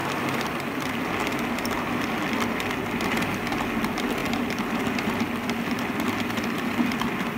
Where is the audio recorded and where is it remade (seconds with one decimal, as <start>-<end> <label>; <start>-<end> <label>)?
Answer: 0.0-7.4 recorded